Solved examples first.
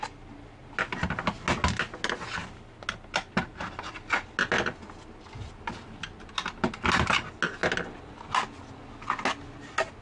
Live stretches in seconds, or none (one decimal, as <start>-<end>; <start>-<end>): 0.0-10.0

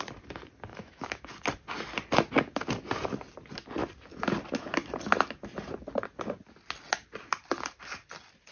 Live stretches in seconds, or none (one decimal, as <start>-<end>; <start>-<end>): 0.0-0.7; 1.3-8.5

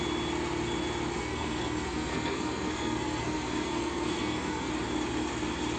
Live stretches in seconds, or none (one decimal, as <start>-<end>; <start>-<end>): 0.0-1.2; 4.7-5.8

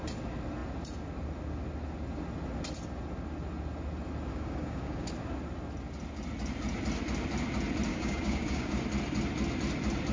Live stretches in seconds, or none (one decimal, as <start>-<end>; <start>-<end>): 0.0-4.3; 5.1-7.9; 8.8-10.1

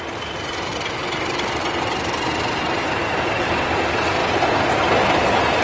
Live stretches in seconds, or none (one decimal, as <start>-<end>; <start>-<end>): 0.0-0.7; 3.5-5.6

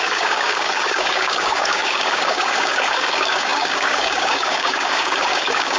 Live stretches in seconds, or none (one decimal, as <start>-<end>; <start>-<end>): none

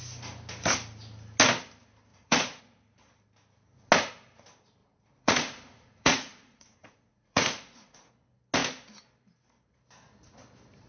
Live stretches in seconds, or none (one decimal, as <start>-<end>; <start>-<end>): 0.0-2.1; 2.6-4.8; 8.1-10.9